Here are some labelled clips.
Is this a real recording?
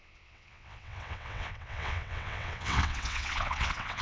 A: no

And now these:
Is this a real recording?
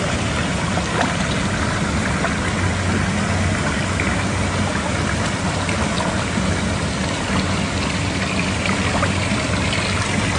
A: yes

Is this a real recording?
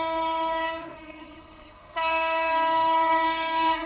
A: no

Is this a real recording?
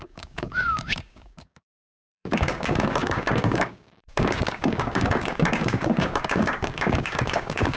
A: no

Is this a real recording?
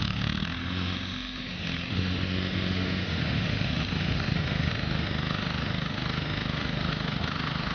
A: no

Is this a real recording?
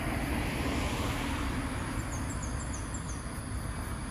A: yes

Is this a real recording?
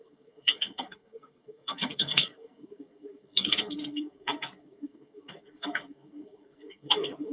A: no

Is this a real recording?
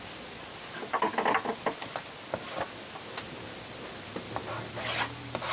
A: yes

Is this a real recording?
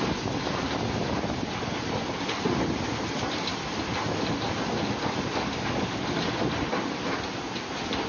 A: yes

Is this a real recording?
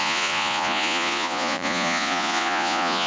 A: no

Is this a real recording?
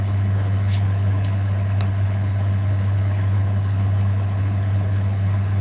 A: no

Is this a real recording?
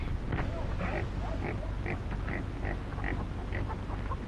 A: yes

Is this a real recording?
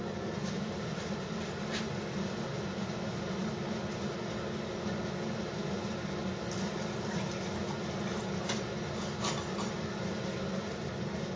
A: yes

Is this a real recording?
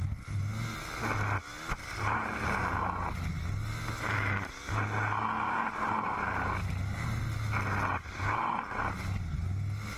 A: yes